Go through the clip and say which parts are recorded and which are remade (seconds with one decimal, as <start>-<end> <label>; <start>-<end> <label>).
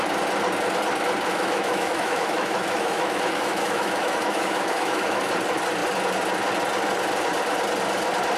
0.0-1.3 recorded; 1.3-5.3 remade; 5.3-8.4 recorded